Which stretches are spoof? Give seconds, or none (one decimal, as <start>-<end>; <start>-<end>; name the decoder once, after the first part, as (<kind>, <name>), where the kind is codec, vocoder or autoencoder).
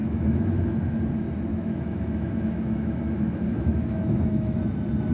0.0-1.0 (autoencoder, DAC-VAE); 1.5-4.6